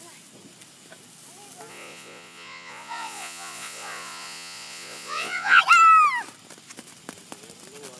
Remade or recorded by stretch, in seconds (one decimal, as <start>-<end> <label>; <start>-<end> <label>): 0.0-1.7 recorded; 1.7-5.6 remade; 5.6-8.0 recorded